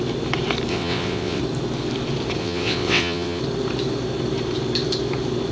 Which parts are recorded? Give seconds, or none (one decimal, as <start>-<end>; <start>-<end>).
0.0-0.7; 1.4-2.4; 3.4-5.5